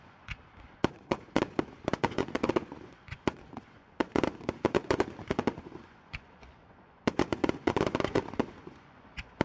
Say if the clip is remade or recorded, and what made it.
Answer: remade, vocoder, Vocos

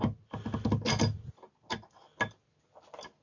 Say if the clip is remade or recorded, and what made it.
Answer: recorded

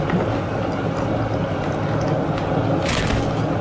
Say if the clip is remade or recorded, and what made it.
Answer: recorded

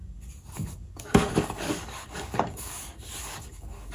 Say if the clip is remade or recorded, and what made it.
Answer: remade, codec, DAC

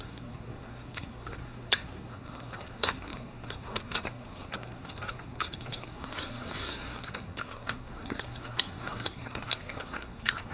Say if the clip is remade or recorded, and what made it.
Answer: remade, codec, SNAC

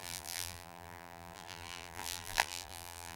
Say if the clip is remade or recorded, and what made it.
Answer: remade, vocoder, BigVGAN v2